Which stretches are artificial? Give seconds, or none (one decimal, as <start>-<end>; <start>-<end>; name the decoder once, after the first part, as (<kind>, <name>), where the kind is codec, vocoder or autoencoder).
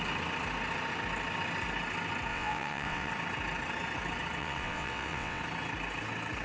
2.3-3.1 (vocoder, WaveNeXt); 4.4-5.4